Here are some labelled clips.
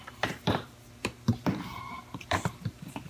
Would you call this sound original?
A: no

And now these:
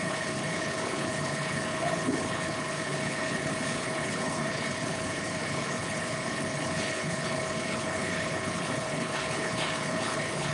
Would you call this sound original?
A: no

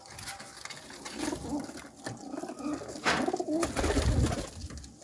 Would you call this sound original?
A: yes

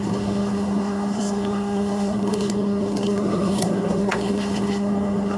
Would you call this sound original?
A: no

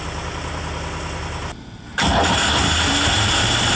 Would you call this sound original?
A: yes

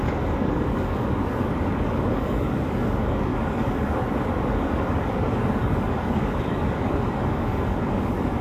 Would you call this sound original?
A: no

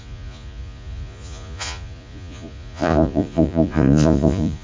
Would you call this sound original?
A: no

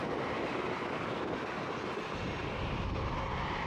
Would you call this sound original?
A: yes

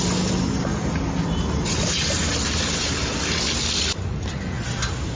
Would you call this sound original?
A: yes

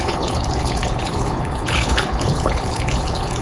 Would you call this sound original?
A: no